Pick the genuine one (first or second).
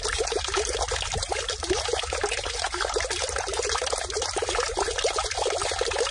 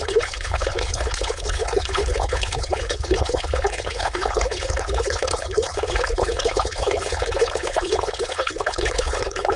first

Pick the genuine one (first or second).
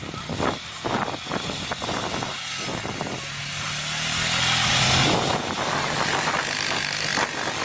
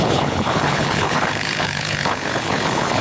first